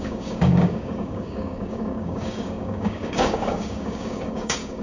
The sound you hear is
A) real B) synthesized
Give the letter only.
B